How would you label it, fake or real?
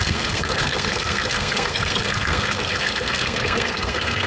fake